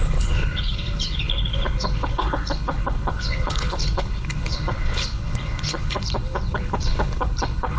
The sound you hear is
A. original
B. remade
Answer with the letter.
B